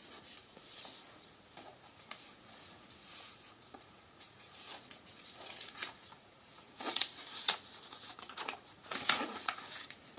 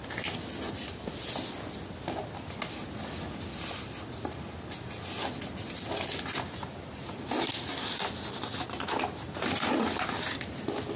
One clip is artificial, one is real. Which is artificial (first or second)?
first